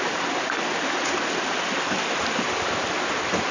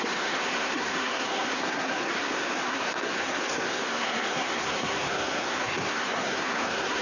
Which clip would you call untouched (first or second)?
first